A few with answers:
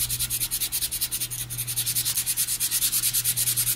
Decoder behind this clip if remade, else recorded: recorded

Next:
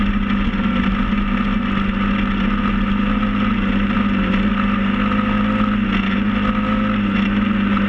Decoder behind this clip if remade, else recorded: recorded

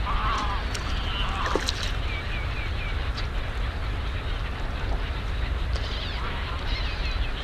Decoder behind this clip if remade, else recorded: recorded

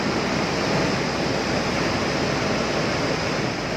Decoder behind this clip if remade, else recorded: recorded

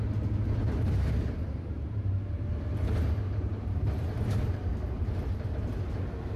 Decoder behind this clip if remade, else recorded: remade, vocoder, BigVGAN v2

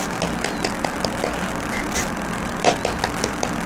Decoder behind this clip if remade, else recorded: recorded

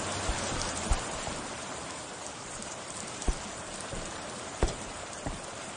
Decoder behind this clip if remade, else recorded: remade, vocoder, BigVGAN v2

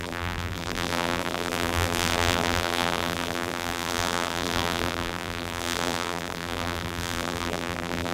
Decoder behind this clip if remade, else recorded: remade, vocoder, BigVGAN v2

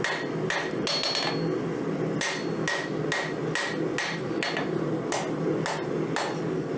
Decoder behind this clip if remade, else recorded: recorded